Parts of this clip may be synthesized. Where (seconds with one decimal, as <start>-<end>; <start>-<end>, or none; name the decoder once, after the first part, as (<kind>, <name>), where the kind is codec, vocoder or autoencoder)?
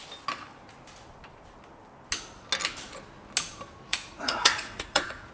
3.9-5.3 (vocoder, Vocos)